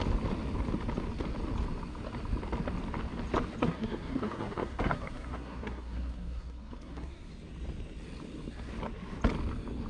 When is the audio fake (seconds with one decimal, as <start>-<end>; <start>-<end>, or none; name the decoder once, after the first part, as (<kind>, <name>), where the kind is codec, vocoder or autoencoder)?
3.6-7.3 (codec, SNAC)